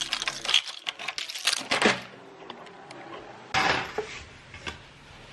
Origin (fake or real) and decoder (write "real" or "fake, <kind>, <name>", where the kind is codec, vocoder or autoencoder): real